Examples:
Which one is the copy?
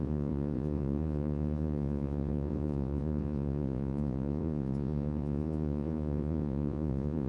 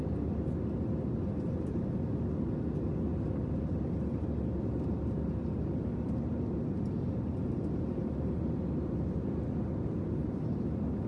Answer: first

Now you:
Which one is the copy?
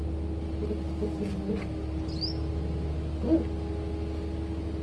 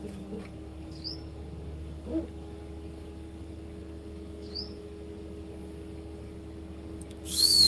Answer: second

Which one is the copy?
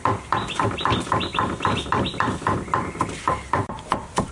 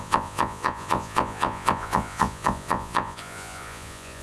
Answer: second